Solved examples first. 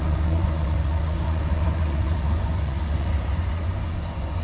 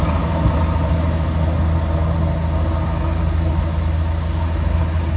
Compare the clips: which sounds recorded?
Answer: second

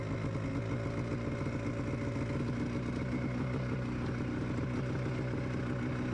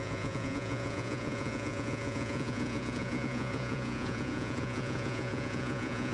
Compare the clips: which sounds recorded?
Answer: first